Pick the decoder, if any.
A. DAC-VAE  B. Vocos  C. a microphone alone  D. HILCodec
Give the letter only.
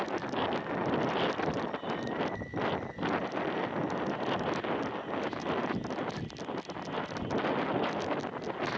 C